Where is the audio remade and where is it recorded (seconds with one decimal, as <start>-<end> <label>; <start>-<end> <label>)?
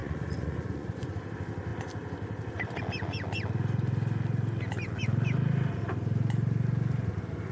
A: 0.0-1.1 remade; 1.1-7.5 recorded